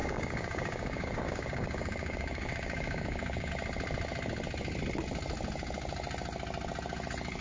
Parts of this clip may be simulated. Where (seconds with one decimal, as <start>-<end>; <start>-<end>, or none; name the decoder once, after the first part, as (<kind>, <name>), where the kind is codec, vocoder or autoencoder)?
0.0-3.5 (codec, DAC)